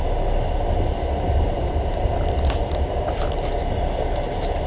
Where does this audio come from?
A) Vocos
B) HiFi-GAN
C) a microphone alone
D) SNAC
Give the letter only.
C